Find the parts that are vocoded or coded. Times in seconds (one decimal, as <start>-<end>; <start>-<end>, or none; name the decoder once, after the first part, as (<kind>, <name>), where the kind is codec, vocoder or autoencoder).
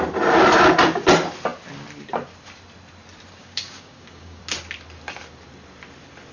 3.4-4.4 (codec, DAC)